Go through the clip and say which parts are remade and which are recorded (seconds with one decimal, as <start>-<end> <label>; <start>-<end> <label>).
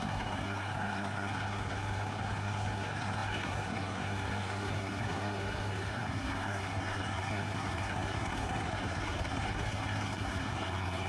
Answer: 0.0-11.1 remade